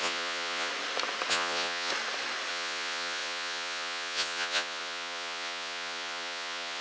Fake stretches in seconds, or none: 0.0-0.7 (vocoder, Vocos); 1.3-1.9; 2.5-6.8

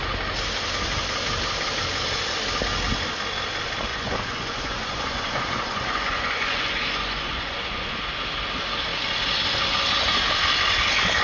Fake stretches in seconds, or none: 3.9-7.9 (vocoder, Vocos)

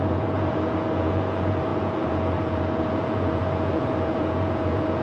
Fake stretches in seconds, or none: 0.0-5.0 (vocoder, Vocos)

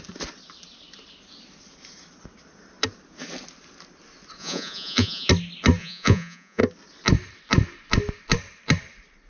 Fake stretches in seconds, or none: 4.4-5.3 (vocoder, Vocos); 5.8-6.6

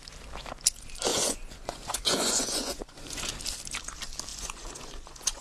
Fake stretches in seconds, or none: 1.1-3.3 (vocoder, Vocos); 4.3-5.4